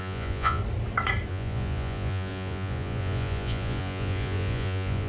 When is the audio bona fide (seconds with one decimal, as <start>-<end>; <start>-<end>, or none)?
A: 0.6-1.3